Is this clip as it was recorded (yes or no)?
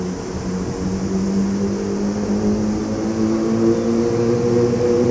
yes